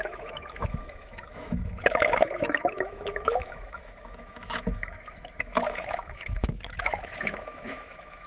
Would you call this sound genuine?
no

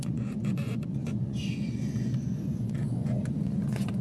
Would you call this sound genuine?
no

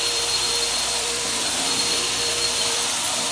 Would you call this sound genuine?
no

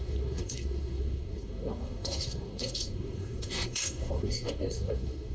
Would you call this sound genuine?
no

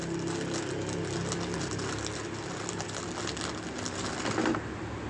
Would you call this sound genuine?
yes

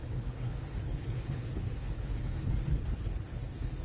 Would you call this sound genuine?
no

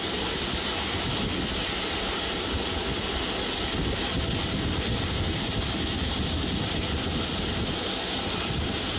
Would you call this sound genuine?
yes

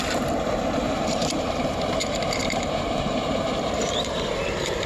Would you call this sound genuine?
no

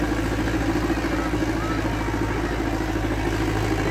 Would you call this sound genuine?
yes